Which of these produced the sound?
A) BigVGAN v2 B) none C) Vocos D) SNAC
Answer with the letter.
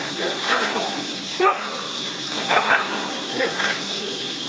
D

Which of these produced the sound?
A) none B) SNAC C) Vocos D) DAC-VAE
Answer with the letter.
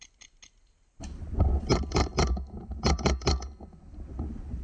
A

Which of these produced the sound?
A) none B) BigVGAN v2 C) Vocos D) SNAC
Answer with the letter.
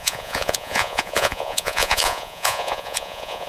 C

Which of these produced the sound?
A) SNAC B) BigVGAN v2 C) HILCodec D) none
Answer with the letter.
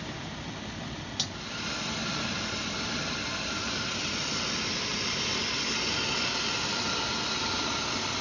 D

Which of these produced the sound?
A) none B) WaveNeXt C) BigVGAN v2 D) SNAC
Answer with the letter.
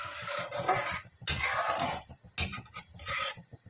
A